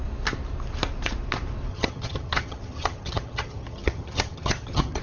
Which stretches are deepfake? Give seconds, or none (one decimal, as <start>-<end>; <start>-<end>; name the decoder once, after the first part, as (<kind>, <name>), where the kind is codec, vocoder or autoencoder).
1.7-5.0 (vocoder, HiFi-GAN)